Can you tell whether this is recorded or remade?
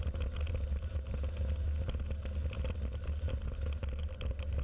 recorded